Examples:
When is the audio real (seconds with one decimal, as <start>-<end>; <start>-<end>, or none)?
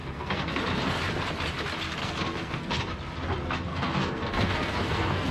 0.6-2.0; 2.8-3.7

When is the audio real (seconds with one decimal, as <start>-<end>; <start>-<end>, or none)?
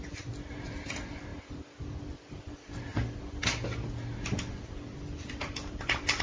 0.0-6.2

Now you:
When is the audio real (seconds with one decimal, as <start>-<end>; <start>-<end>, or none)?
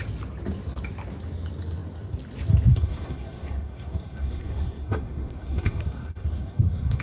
0.0-2.7